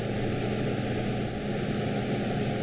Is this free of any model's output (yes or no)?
yes